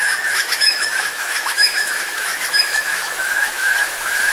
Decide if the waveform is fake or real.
fake